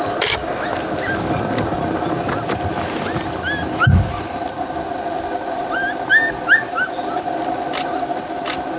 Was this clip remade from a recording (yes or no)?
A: no